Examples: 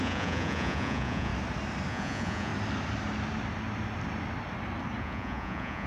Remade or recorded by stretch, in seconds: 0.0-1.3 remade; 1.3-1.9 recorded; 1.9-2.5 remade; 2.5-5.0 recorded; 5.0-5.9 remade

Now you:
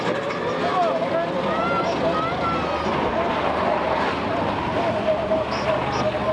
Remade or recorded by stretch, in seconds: 0.0-6.3 recorded